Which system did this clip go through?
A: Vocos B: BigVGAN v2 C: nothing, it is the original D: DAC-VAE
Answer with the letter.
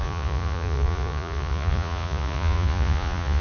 A